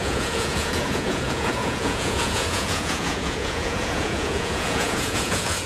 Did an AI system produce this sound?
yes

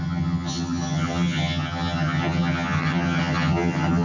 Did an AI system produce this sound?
yes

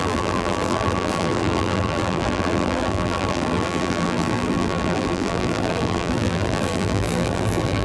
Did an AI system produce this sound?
yes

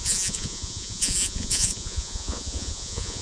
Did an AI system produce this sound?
yes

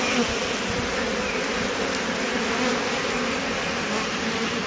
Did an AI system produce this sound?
no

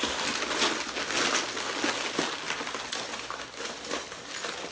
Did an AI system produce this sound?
no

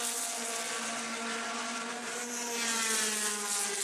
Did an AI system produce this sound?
no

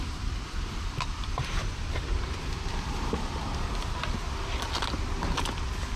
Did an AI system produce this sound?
yes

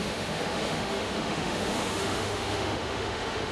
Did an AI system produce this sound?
yes